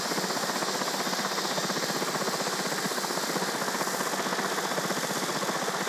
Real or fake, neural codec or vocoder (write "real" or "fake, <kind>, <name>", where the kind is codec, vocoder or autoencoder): real